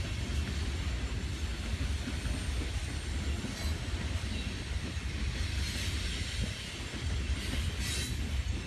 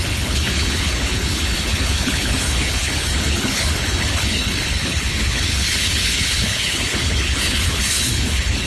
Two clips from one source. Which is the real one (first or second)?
first